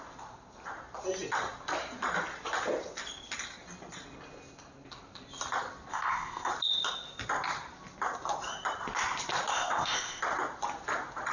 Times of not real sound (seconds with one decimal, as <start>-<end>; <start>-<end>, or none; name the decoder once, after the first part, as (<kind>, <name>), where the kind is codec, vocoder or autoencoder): 5.9-6.5 (codec, ZipCodec); 9.5-10.2